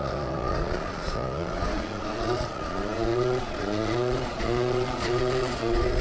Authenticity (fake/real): fake